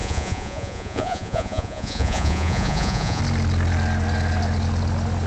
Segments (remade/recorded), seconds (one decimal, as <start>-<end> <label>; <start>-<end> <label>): 0.0-3.2 remade; 3.2-5.3 recorded